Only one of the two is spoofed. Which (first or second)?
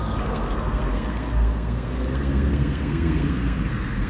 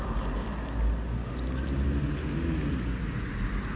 first